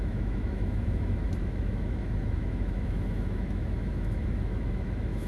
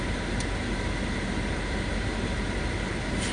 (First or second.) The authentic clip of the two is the second